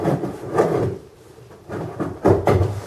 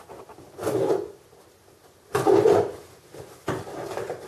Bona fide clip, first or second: second